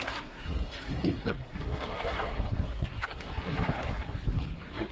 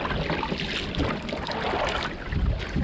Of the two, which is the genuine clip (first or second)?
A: second